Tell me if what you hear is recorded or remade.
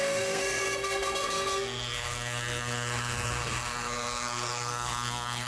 remade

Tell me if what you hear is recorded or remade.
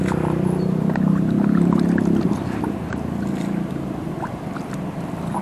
recorded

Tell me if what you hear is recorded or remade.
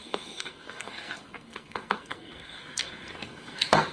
remade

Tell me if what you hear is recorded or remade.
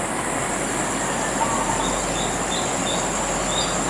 recorded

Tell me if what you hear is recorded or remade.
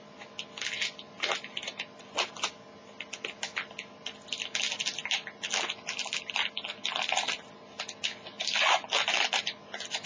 recorded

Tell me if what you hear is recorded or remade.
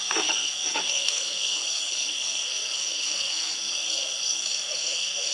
remade